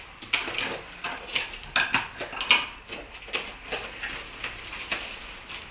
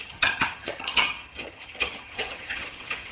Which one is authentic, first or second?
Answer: first